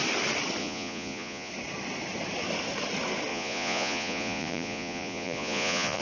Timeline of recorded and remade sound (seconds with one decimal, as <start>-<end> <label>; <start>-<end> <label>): 0.0-0.6 recorded; 0.6-1.5 remade; 1.5-3.3 recorded; 3.3-6.0 remade